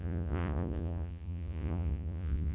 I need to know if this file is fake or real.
fake